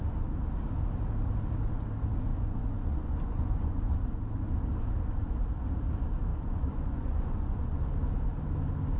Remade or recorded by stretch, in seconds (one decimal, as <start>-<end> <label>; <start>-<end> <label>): 0.0-2.3 recorded; 2.3-3.8 remade; 3.8-6.3 recorded; 6.3-7.8 remade; 7.8-9.0 recorded